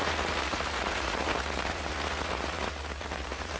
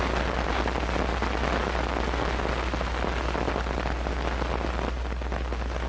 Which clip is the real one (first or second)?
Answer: second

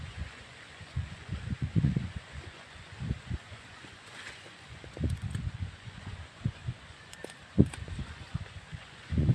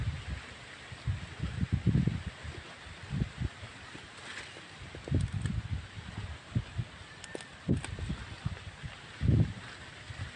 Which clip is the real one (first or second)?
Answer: second